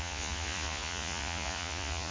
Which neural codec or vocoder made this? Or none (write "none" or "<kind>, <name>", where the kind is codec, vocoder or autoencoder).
vocoder, Vocos